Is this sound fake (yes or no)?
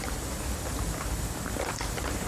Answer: yes